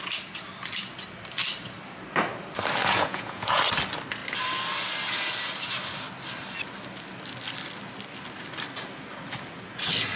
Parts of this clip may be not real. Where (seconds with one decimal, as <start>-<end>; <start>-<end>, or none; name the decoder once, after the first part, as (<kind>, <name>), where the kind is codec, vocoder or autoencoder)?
2.8-3.6 (vocoder, Vocos)